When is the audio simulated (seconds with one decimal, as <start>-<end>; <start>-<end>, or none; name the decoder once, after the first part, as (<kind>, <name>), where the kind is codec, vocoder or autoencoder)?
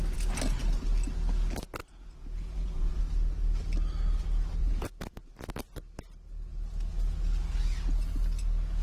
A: 1.8-3.0 (vocoder, Vocos); 4.6-5.3